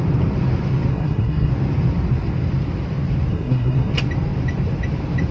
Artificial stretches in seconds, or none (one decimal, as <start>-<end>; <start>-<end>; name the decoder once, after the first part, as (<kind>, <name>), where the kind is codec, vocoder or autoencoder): 0.9-1.5 (codec, SNAC); 3.3-3.9